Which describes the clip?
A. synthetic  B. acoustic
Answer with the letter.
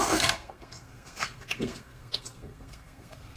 A